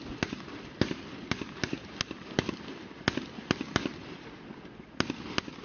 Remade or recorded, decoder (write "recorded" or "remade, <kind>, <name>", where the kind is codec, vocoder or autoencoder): recorded